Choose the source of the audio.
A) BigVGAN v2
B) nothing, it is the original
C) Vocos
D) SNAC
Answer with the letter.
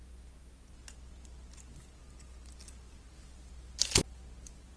B